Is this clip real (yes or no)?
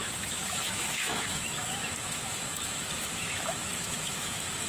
no